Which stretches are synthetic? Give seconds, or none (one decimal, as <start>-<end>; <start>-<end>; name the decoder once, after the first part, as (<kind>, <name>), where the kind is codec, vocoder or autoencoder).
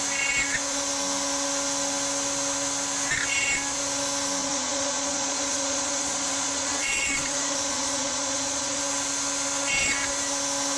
4.4-8.8 (vocoder, Vocos)